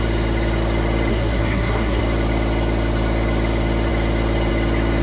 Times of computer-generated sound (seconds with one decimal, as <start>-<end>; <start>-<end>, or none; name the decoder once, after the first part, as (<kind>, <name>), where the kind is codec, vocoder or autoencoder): 1.1-2.0 (codec, SNAC)